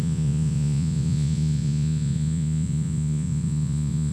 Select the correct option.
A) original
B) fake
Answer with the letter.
B